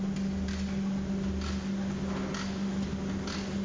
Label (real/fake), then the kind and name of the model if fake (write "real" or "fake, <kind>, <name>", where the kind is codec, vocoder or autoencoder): real